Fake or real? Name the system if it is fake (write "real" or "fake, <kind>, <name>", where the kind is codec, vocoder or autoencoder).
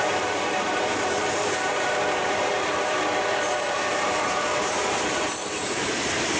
fake, vocoder, BigVGAN v2